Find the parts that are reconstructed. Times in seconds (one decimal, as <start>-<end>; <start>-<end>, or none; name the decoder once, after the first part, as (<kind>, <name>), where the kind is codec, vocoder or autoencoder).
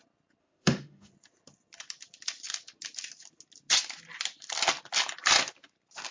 0.4-1.1 (autoencoder, DAC-VAE)